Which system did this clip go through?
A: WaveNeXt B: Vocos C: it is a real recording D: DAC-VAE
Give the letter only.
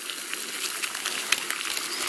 C